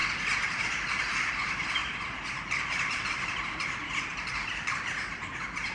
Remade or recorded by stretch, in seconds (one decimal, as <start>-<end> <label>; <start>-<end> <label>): 0.0-0.6 recorded; 0.6-1.8 remade; 1.8-2.6 recorded; 2.6-5.7 remade